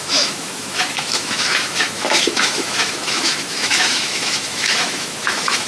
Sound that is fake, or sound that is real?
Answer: fake